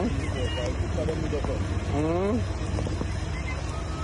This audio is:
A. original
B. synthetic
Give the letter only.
A